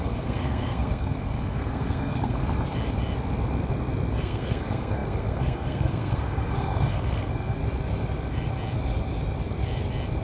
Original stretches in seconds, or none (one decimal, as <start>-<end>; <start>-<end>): 2.4-4.1; 7.6-10.2